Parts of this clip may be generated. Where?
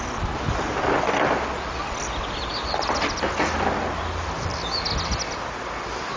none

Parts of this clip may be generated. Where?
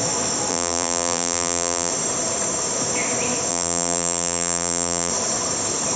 0.5-1.9 (vocoder, BigVGAN v2); 3.5-5.1